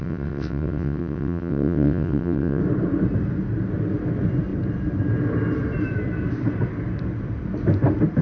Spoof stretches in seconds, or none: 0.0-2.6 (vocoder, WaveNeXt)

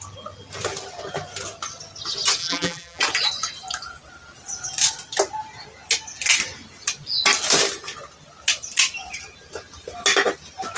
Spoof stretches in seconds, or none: 2.4-3.0 (vocoder, BigVGAN v2)

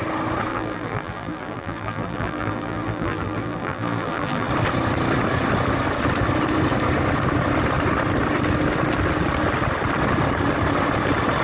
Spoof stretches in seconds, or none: 0.5-4.5 (vocoder, BigVGAN v2)

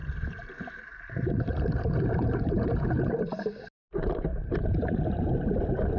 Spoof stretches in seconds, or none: 0.0-3.6 (vocoder, BigVGAN v2); 4.3-5.6

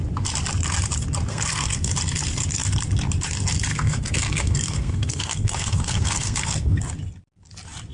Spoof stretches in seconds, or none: 1.3-1.9 (codec, SNAC); 3.7-6.8

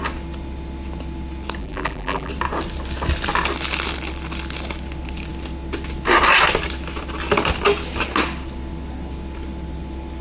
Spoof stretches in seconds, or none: 1.6-2.3 (vocoder, BigVGAN v2)